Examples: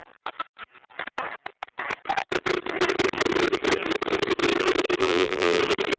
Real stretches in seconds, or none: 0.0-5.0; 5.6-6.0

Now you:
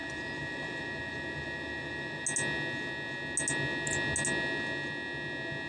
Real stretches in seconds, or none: 2.2-5.7

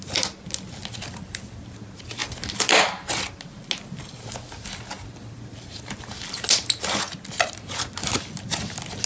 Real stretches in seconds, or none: 0.0-9.1